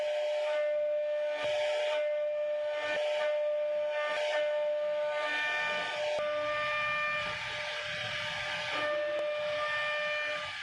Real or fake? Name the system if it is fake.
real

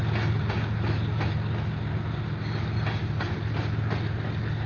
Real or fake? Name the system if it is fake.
real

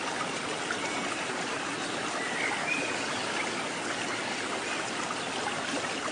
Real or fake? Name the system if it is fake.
real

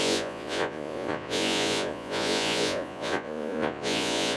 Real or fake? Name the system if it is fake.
fake, vocoder, Vocos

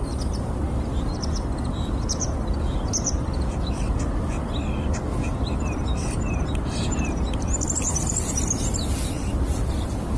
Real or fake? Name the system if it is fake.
real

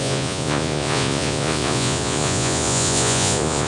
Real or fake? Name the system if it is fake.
fake, vocoder, Vocos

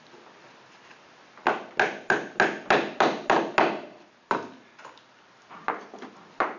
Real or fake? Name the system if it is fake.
real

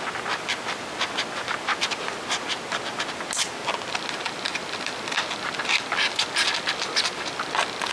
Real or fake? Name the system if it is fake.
real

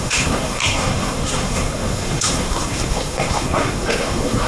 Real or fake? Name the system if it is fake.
fake, codec, SNAC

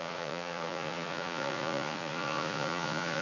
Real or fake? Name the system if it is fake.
fake, vocoder, Vocos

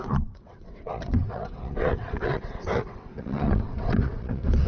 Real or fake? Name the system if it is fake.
fake, vocoder, WaveNeXt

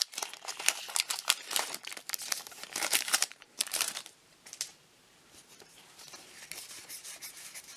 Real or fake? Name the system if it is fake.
fake, vocoder, BigVGAN v2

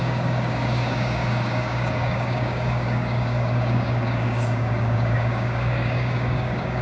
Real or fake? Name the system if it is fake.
fake, codec, DAC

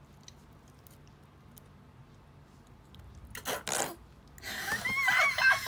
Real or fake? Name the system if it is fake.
real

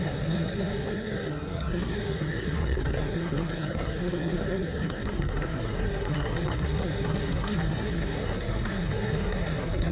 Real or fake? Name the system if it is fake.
fake, codec, SNAC